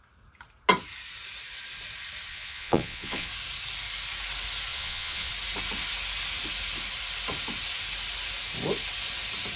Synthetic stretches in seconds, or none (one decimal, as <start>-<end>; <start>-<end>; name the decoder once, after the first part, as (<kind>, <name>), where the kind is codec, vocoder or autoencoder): 2.3-3.3 (vocoder, Vocos); 4.7-5.3